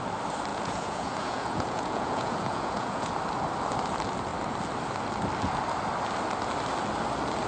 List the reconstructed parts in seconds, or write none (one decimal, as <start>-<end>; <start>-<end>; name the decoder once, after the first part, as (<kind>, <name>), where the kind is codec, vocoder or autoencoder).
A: 0.5-3.1 (vocoder, Vocos)